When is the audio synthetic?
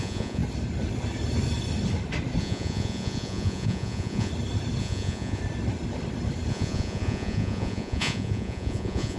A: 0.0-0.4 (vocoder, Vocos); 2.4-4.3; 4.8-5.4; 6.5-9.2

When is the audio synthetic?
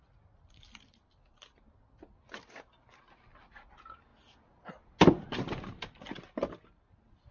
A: none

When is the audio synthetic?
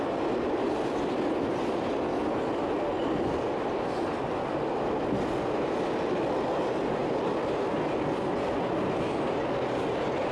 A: none